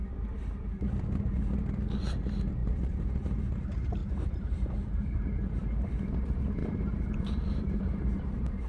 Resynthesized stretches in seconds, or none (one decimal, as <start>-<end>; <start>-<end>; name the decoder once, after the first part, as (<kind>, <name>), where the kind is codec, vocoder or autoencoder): 2.6-3.4 (vocoder, BigVGAN v2); 4.0-4.5; 6.6-8.7